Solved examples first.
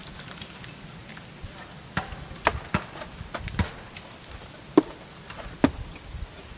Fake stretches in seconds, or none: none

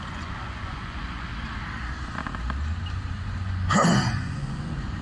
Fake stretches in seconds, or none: 0.0-1.3 (vocoder, Vocos); 3.1-5.0

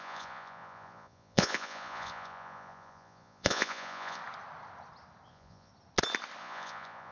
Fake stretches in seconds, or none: 0.0-4.2 (vocoder, Vocos); 5.3-5.7; 6.4-7.1

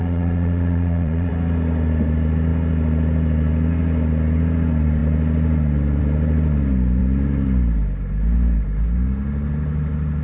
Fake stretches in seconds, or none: 0.0-1.3 (vocoder, Vocos)

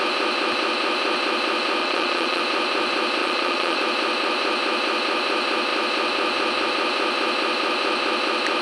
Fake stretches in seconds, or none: 1.8-2.4 (vocoder, Vocos); 3.2-3.8

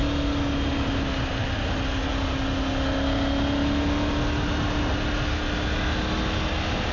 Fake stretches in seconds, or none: none

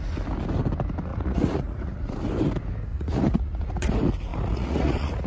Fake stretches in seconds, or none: 1.1-2.2 (vocoder, Vocos); 2.9-3.9; 4.3-5.3